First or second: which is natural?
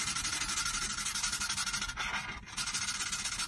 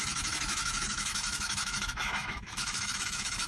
first